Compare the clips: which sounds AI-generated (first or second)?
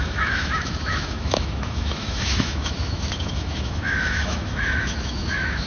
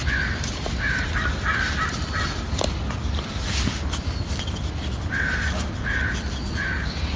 first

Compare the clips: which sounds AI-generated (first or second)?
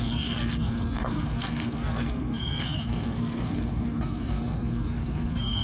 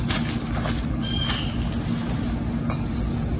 first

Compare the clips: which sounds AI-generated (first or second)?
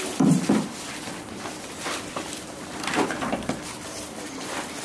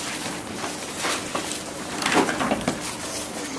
first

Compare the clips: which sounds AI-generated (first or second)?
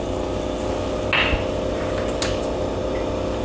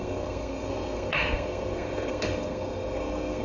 second